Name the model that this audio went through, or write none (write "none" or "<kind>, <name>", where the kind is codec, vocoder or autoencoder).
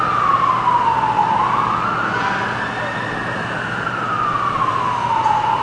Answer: none